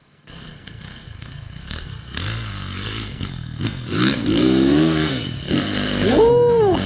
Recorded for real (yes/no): no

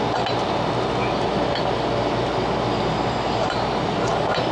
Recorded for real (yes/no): yes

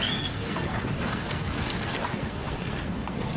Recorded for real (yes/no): no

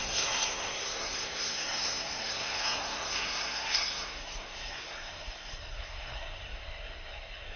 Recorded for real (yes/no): no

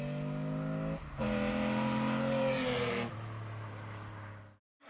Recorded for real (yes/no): yes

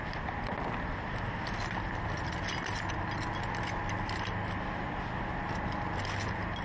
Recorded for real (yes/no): yes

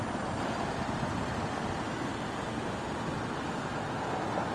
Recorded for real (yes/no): yes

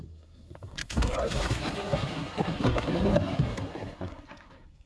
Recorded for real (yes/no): no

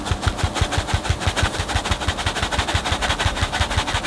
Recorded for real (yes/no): yes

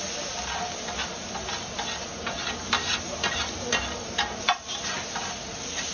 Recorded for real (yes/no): yes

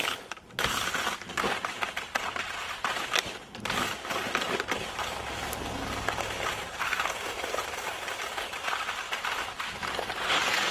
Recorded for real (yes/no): yes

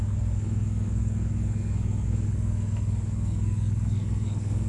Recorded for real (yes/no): no